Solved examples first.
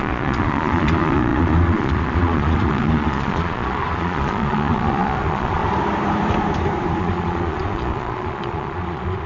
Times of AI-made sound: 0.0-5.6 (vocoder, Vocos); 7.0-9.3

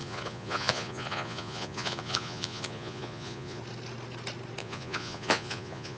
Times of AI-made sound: 0.0-3.6 (vocoder, Vocos); 4.6-6.0

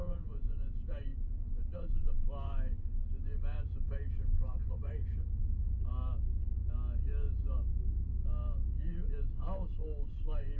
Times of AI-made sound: 0.0-0.5 (vocoder, Vocos)

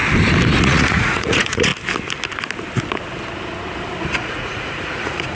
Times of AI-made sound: 0.6-1.7 (vocoder, Vocos); 4.0-5.3